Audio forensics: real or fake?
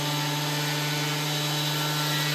real